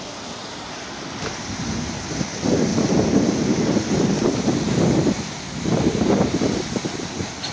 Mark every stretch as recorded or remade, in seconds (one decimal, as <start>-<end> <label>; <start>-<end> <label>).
0.0-7.5 recorded